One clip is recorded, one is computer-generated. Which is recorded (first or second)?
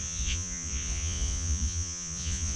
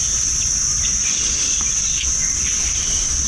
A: second